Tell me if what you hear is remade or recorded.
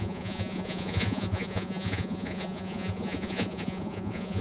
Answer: remade